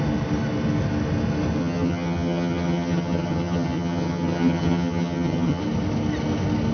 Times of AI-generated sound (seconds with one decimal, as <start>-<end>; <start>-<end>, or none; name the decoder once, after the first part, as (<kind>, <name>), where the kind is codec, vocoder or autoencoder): 1.6-5.6 (vocoder, HiFi-GAN)